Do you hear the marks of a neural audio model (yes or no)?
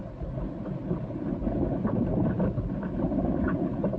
no